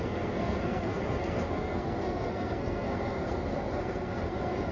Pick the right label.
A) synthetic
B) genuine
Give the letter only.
A